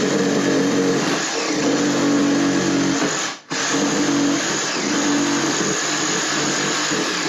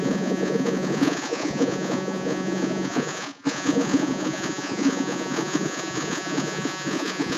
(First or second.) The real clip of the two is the first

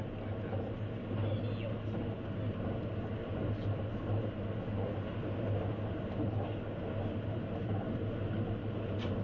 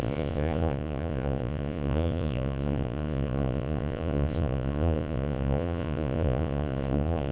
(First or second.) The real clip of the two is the first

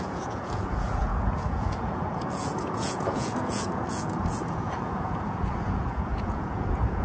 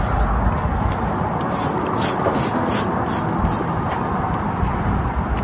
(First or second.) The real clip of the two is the second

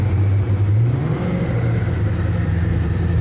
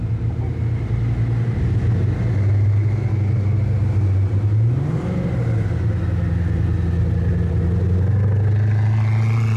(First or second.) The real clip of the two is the second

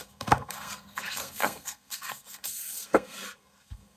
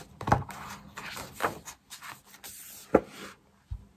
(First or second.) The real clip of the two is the second